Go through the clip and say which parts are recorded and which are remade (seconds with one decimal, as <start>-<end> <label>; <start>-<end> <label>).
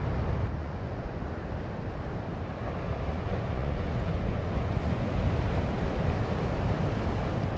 0.0-0.6 recorded; 0.6-1.3 remade; 1.3-3.1 recorded; 3.1-5.2 remade; 5.2-7.6 recorded